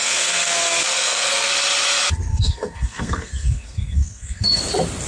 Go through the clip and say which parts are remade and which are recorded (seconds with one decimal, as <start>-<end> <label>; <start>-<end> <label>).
0.0-0.5 remade; 0.5-0.9 recorded; 0.9-1.5 remade; 1.5-2.3 recorded; 2.3-4.6 remade; 4.6-5.1 recorded